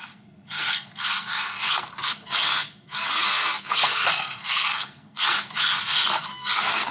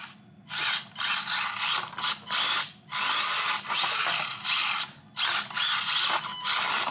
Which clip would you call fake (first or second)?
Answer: first